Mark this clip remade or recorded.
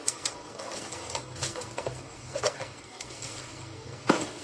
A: remade